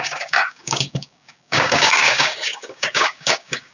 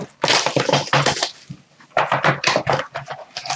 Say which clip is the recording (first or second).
second